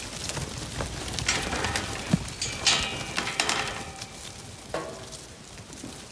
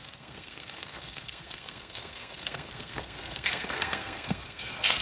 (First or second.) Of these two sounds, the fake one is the second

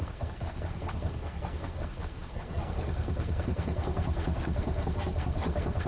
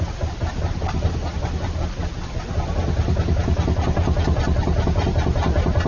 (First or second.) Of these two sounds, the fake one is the first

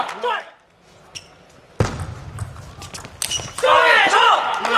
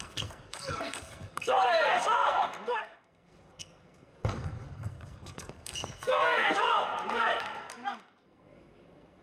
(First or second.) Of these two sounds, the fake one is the second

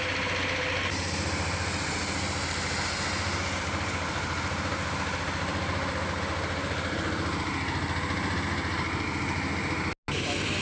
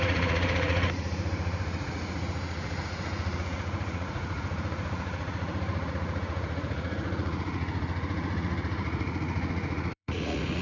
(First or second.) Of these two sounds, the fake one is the second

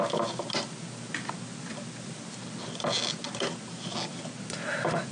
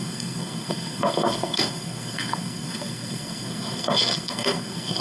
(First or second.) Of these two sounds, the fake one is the second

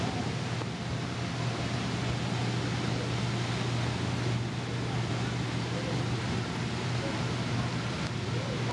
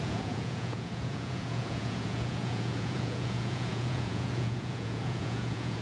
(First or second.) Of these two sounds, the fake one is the second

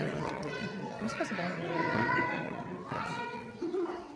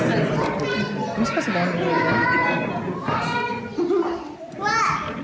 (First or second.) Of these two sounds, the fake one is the first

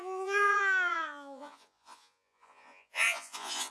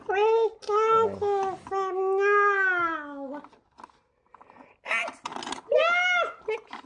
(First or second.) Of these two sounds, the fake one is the first